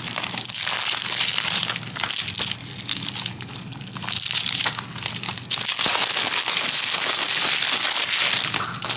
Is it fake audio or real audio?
real